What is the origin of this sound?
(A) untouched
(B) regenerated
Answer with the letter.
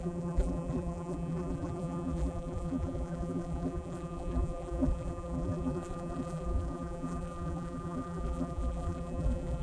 B